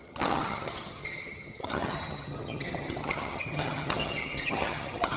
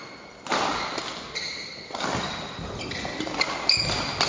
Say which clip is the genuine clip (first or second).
second